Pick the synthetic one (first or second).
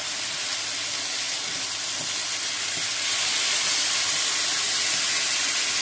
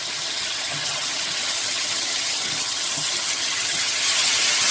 second